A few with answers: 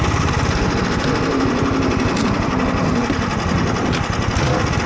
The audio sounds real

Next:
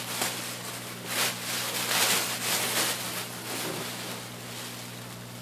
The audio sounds real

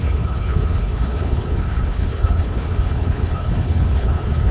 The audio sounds fake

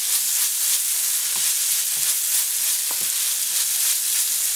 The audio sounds real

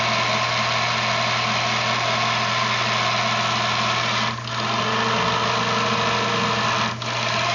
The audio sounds real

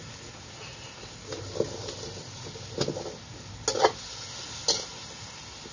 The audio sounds real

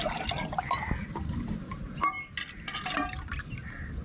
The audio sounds real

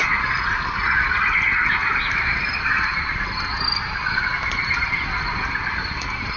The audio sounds real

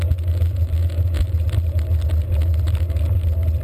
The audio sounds real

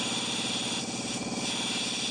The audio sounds real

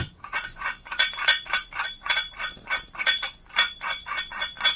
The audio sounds fake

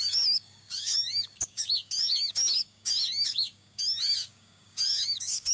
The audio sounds fake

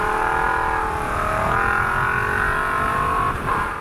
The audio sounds real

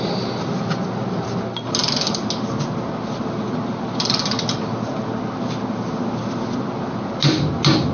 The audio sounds real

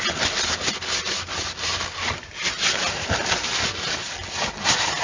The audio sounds real